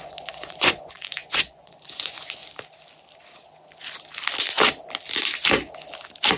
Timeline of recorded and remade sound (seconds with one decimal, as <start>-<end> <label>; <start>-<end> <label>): 0.0-2.4 remade; 2.4-6.4 recorded